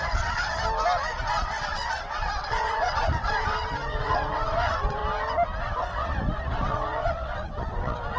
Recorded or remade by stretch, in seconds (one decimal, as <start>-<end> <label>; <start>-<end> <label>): 0.0-0.6 remade; 0.6-1.2 recorded; 1.2-5.0 remade; 5.0-5.6 recorded; 5.6-8.2 remade

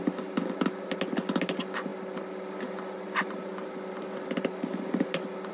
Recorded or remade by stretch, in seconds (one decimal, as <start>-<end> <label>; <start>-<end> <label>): 0.0-5.5 recorded

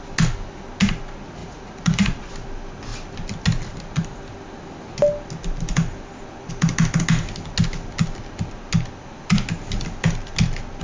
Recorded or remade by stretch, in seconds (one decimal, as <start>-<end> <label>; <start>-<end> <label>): 0.0-1.4 recorded; 1.4-2.3 remade; 2.3-10.8 recorded

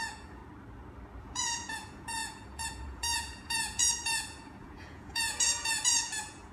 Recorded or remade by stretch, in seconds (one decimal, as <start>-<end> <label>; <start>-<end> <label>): 0.0-0.4 remade; 0.4-1.2 recorded; 1.2-6.5 remade

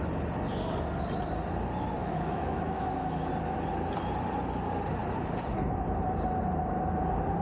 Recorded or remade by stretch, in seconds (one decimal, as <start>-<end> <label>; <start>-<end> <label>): 0.0-2.0 recorded; 2.0-3.3 remade; 3.3-7.4 recorded

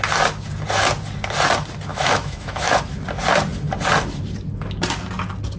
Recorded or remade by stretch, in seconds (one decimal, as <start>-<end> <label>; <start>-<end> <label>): 0.0-1.9 recorded; 1.9-2.8 remade; 2.8-5.6 recorded